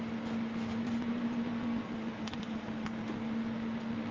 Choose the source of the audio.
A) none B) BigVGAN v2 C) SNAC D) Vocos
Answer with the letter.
A